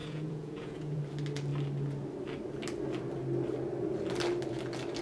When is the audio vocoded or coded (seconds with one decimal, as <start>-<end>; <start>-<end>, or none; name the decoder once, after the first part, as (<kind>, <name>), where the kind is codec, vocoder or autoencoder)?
0.0-1.0 (vocoder, Vocos)